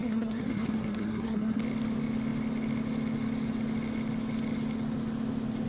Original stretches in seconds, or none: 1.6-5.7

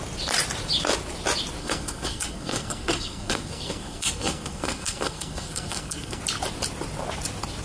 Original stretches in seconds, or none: 0.0-1.6; 6.2-7.6

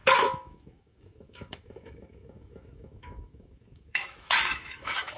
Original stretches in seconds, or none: none

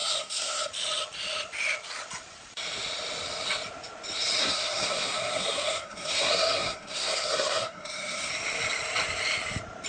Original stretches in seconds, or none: 0.7-4.4; 8.3-9.9

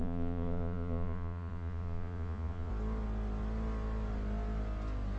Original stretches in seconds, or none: 2.7-5.2

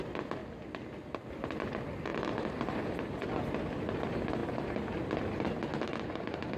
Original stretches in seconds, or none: 0.0-6.6